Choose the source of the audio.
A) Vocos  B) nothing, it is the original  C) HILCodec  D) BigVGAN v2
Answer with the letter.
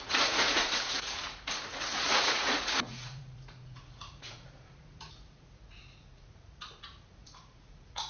A